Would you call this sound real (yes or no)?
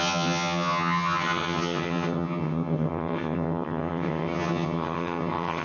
no